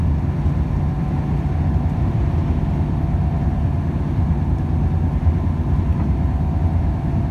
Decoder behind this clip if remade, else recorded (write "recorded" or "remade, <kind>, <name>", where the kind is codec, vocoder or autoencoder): recorded